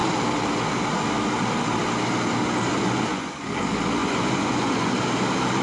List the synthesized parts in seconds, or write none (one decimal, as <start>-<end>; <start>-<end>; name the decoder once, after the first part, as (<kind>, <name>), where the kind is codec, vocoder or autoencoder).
2.7-3.5 (vocoder, Vocos); 4.0-4.9